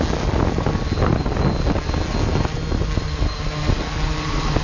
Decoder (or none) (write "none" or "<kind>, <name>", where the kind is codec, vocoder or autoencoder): none